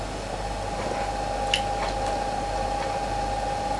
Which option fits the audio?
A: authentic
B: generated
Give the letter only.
A